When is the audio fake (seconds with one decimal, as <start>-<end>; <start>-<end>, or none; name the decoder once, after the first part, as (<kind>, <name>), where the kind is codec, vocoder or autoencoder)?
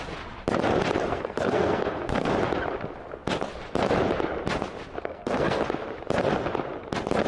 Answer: 1.1-2.3 (codec, SNAC); 5.0-5.6